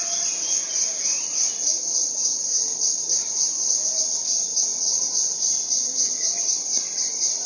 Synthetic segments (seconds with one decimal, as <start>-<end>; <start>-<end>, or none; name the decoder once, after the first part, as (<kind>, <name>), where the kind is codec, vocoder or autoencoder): none